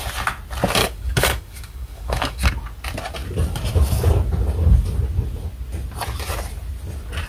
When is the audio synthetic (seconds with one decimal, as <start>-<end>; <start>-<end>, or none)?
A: 0.8-2.5